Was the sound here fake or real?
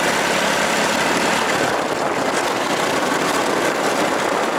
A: real